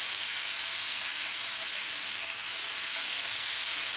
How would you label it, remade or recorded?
remade